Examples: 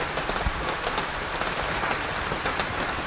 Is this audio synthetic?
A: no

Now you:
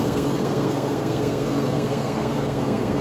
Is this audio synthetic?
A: yes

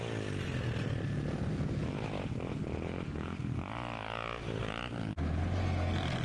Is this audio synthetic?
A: no